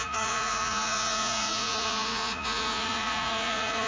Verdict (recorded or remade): remade